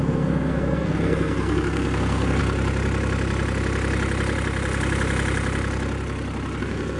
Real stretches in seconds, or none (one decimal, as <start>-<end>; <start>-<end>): 2.4-6.6